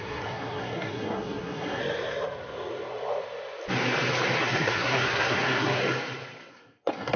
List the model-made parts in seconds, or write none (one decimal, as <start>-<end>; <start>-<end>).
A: 0.0-1.8; 4.4-5.8; 6.5-7.2

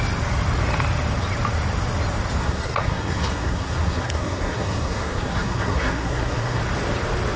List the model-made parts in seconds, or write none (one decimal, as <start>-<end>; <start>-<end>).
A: 2.4-6.6

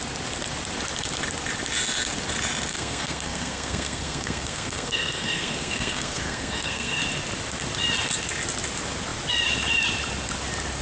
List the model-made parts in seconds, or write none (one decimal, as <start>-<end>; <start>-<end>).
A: 2.7-7.0

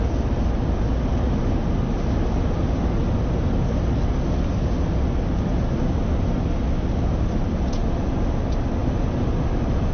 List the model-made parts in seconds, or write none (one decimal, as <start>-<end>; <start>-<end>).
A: none